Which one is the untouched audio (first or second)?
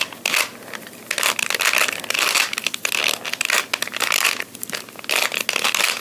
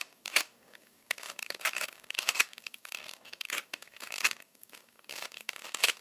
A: first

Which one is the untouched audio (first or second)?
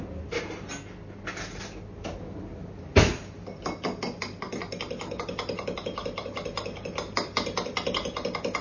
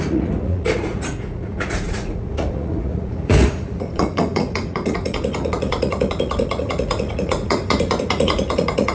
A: first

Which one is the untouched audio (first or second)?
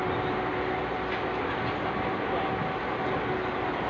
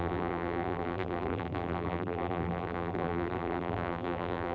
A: first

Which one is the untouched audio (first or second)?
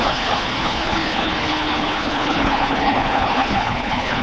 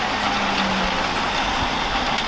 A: second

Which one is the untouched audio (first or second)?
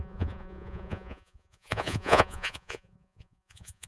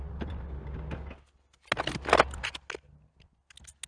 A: second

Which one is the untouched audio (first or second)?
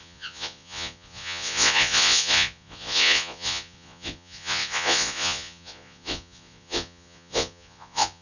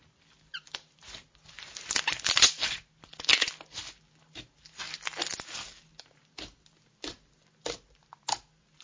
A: second